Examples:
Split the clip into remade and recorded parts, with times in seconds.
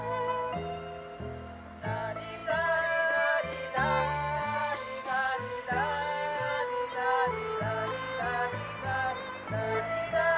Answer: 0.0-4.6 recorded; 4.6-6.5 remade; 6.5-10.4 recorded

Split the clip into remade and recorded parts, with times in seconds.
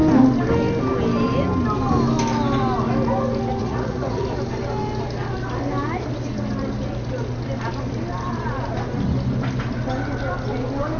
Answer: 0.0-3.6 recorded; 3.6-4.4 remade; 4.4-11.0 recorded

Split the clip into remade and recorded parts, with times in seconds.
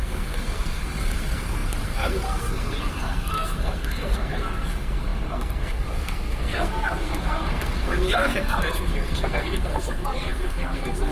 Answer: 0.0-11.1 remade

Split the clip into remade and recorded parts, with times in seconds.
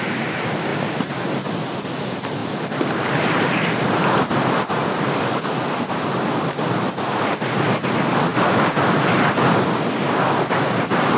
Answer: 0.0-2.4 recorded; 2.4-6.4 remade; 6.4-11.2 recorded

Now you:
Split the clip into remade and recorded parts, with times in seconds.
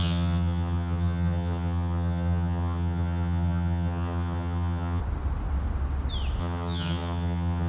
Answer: 0.0-5.0 remade; 5.0-6.4 recorded; 6.4-7.7 remade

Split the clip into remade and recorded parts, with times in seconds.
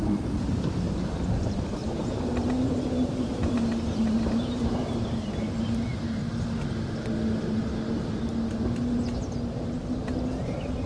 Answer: 0.0-6.2 remade; 6.2-8.5 recorded; 8.5-9.8 remade; 9.8-10.4 recorded; 10.4-10.9 remade